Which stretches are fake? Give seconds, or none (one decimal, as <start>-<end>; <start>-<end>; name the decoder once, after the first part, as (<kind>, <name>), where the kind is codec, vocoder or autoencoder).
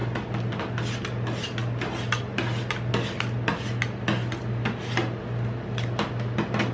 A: none